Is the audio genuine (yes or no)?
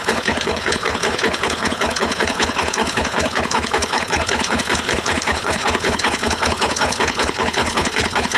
no